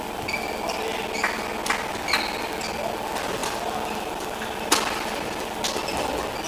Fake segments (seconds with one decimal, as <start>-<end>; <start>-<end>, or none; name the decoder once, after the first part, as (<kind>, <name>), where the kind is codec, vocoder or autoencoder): 3.4-5.6 (vocoder, BigVGAN v2)

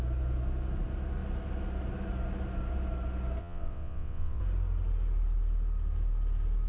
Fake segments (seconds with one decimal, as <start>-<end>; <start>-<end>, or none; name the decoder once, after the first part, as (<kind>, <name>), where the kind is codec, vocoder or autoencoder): 3.4-4.4 (vocoder, WaveNeXt)

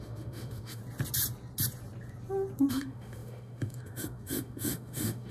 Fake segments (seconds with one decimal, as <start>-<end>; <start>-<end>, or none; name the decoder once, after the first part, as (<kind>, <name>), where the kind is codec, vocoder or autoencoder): 0.0-0.8 (autoencoder, DAC-VAE); 2.7-5.3

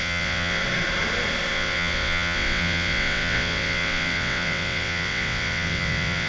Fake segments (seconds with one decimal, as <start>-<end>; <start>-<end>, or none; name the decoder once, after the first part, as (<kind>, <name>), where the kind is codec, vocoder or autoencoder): 0.0-0.6 (vocoder, WaveNeXt); 1.5-6.3

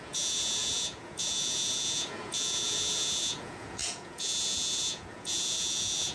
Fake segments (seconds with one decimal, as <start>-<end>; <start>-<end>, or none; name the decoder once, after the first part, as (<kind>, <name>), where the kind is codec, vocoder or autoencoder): 0.0-6.1 (vocoder, Vocos)

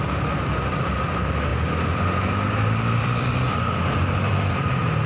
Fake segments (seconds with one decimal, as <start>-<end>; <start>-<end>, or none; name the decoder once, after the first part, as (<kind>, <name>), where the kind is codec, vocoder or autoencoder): 1.5-4.6 (vocoder, BigVGAN v2)

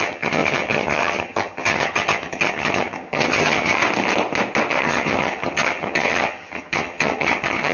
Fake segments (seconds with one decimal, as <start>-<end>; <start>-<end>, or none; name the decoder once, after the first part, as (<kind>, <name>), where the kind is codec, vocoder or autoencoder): 0.0-3.8 (vocoder, HiFi-GAN); 4.7-7.7